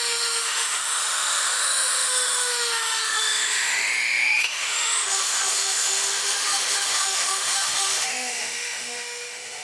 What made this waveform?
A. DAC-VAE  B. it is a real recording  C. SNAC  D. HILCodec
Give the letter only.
A